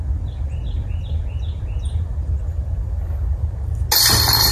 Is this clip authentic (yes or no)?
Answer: yes